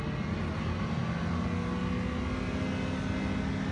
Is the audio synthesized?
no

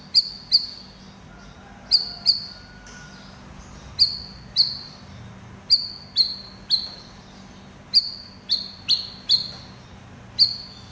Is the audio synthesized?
no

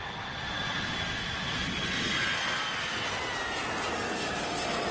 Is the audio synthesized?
no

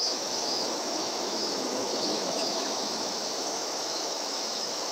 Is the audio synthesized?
yes